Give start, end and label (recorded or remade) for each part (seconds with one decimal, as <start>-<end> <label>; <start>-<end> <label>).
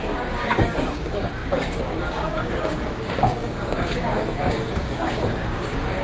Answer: 0.0-6.0 remade